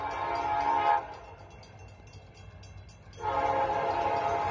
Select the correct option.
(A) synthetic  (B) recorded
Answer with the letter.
B